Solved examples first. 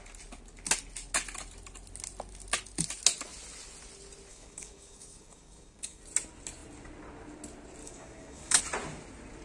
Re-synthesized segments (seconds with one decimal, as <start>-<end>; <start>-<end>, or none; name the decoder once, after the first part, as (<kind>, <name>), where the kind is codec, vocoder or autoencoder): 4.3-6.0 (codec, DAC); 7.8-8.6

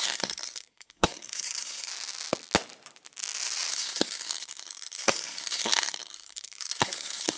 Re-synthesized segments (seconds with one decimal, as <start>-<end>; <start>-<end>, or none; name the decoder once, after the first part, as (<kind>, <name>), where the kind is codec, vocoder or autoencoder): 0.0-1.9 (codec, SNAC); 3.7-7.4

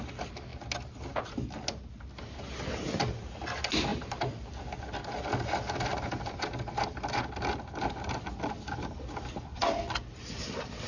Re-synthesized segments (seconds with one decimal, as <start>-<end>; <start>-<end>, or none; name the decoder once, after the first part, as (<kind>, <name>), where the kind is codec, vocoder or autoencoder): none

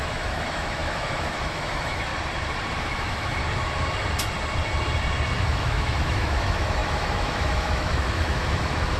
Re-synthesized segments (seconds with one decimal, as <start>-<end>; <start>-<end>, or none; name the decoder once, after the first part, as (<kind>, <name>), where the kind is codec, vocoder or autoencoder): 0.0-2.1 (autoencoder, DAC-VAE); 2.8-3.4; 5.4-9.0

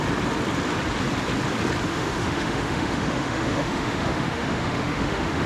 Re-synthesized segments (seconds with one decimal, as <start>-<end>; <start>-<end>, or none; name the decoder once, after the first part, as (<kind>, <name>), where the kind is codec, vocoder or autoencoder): 1.9-5.5 (autoencoder, DAC-VAE)

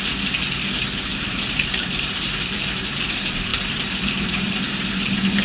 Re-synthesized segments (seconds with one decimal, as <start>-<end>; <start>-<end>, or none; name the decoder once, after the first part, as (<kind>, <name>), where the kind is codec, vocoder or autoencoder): 1.1-2.6 (vocoder, BigVGAN v2)